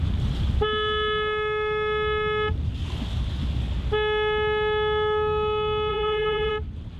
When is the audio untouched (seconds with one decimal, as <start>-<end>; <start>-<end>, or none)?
0.0-5.9; 6.5-7.0